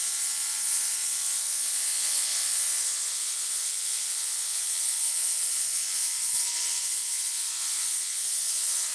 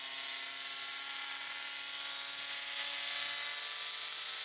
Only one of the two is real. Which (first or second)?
second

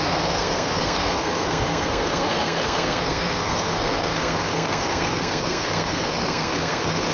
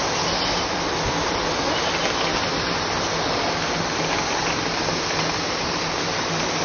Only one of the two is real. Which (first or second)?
second